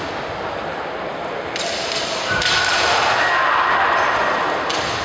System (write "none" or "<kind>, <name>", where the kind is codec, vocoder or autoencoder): none